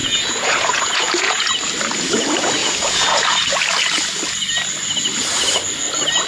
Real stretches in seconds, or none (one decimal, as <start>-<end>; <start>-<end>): 1.5-2.6; 3.2-6.3